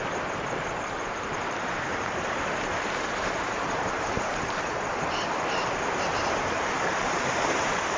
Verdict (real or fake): fake